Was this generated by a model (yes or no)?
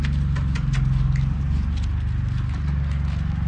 no